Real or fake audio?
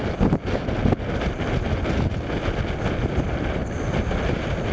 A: real